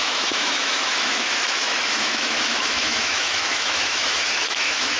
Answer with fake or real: fake